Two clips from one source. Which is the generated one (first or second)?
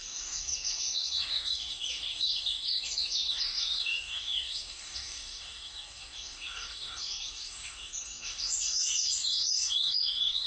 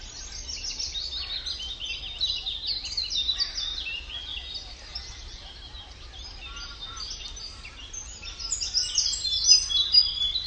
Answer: first